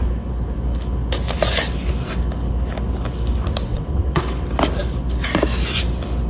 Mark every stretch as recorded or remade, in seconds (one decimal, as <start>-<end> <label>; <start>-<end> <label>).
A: 0.0-3.7 recorded; 3.7-4.2 remade; 4.2-6.3 recorded